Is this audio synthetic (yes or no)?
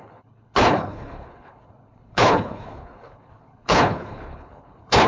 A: yes